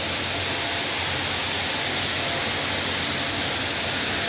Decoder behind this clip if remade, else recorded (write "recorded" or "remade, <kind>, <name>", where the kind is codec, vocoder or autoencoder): recorded